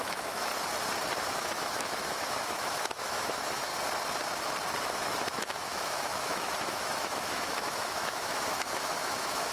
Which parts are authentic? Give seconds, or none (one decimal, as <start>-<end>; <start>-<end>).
0.5-1.2; 3.7-4.8